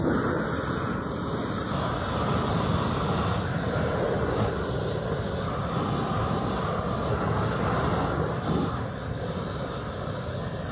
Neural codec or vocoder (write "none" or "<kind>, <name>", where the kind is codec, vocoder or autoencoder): none